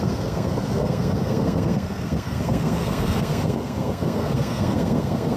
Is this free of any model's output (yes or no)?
no